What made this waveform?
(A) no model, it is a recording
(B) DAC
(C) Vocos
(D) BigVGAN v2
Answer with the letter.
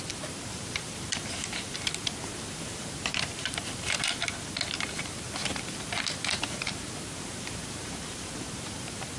D